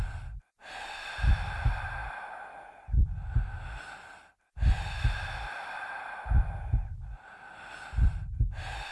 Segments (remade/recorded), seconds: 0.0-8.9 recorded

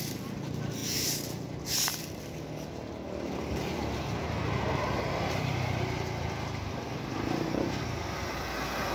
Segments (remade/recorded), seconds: 0.0-8.9 recorded

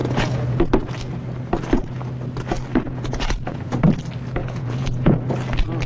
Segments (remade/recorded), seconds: 0.0-0.6 remade; 0.6-2.7 recorded; 2.7-3.8 remade; 3.8-4.4 recorded; 4.4-5.3 remade; 5.3-5.9 recorded